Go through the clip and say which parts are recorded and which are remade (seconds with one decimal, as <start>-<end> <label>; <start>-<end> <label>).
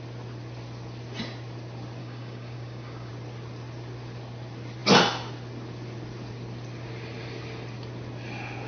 0.0-2.0 recorded; 2.0-3.1 remade; 3.1-8.7 recorded